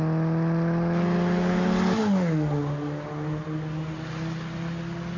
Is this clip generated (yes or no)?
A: no